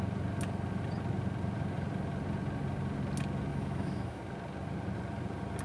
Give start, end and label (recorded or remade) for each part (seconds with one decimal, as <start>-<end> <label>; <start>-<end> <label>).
0.0-3.5 recorded; 3.5-4.2 remade; 4.2-5.6 recorded